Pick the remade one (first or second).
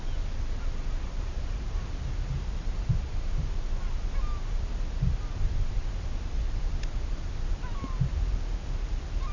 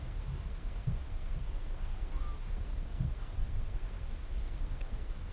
second